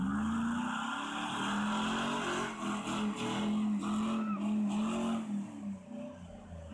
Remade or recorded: recorded